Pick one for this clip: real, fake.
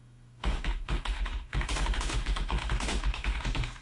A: fake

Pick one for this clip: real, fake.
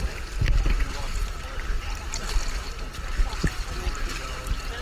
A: real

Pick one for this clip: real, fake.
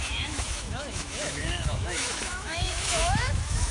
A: fake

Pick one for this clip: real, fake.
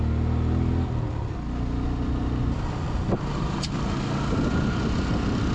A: real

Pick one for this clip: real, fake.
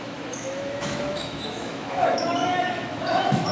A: fake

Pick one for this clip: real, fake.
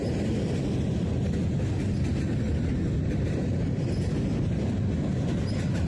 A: real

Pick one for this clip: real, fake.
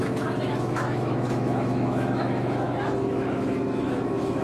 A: fake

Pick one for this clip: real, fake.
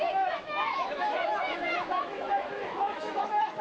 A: fake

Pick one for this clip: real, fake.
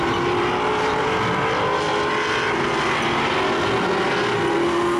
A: real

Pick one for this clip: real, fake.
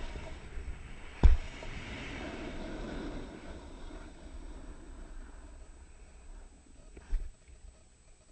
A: real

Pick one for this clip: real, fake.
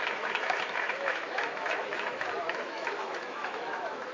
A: fake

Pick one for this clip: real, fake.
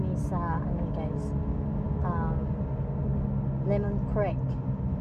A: real